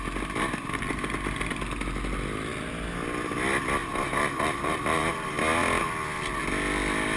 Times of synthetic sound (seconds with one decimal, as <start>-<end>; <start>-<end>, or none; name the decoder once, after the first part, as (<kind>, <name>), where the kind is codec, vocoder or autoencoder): 3.8-5.1 (vocoder, BigVGAN v2)